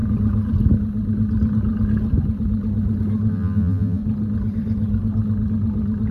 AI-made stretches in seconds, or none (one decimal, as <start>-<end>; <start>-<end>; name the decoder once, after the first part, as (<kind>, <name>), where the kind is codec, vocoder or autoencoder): 3.3-4.0 (vocoder, BigVGAN v2)